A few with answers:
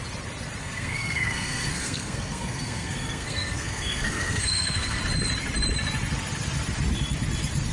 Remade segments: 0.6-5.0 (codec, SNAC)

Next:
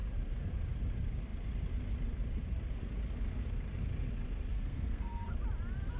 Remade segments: 4.5-5.3 (codec, SNAC)

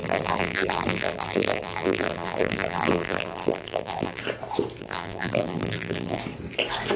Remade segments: 0.0-4.2 (vocoder, BigVGAN v2); 4.8-6.2